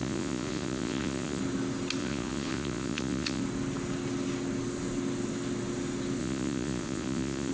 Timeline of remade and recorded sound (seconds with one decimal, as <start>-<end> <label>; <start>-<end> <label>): 0.0-1.4 remade; 1.4-2.0 recorded; 2.0-3.4 remade; 3.4-6.2 recorded; 6.2-7.5 remade